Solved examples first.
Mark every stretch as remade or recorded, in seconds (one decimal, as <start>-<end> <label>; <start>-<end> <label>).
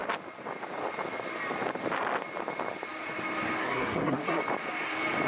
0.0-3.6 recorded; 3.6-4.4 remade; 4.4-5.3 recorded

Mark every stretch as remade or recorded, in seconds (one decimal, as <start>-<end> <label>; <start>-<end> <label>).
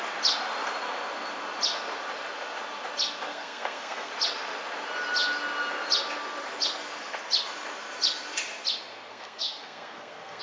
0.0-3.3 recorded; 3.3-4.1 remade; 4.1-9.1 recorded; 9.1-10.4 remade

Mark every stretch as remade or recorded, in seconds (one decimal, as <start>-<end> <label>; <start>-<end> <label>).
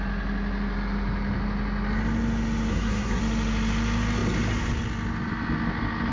0.0-2.7 recorded; 2.7-3.2 remade; 3.2-6.1 recorded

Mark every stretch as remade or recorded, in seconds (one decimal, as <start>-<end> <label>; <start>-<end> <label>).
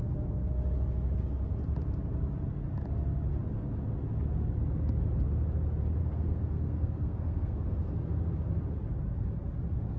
0.0-6.0 recorded; 6.0-8.0 remade; 8.0-10.0 recorded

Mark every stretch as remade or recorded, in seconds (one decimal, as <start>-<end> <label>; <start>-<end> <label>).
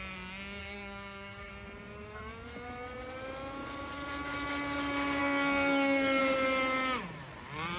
0.0-0.6 recorded; 0.6-1.5 remade; 1.5-5.2 recorded; 5.2-6.2 remade; 6.2-7.8 recorded